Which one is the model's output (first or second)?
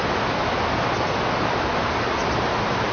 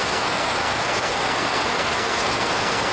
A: second